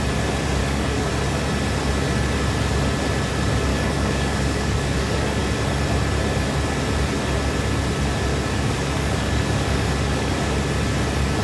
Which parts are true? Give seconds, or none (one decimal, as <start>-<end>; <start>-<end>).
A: 0.0-0.6; 1.1-3.7; 5.4-8.3; 10.6-11.4